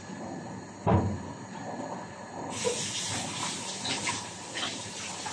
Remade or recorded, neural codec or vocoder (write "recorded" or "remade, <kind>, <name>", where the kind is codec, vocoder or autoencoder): recorded